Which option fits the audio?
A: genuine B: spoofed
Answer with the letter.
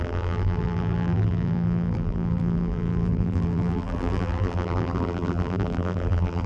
B